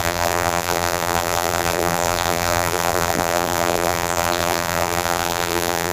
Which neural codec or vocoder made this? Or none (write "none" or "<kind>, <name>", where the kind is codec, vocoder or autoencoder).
vocoder, BigVGAN v2